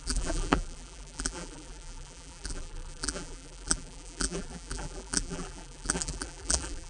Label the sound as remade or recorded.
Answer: remade